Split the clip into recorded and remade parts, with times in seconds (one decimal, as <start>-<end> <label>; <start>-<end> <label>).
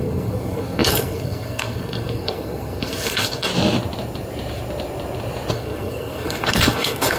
0.0-3.5 remade; 3.5-5.5 recorded; 5.5-7.2 remade